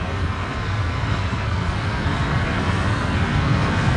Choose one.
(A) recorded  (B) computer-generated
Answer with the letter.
B